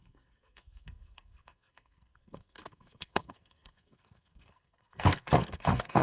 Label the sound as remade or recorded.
remade